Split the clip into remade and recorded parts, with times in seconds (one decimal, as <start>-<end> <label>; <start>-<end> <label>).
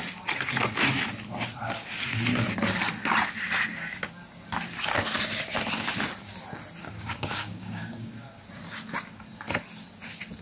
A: 0.0-6.8 recorded; 6.8-8.1 remade; 8.1-10.4 recorded